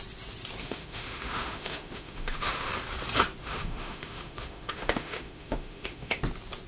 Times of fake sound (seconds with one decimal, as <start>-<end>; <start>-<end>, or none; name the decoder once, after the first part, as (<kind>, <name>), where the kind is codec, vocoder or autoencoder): 0.6-2.7 (autoencoder, DAC-VAE); 3.4-6.2